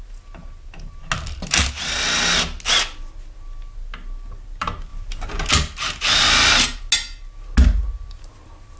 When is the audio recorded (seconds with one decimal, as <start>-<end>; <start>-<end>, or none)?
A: 0.0-0.4; 1.1-4.9; 5.5-8.8